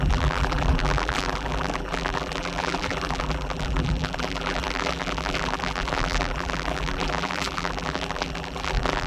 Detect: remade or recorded remade